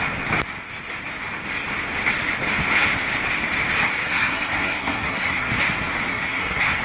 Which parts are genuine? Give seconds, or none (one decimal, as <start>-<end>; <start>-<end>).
0.0-4.0; 5.5-6.1